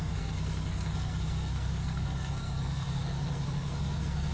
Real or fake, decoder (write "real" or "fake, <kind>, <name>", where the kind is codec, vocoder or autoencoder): fake, codec, SNAC